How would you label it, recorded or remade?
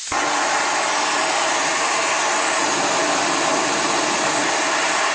recorded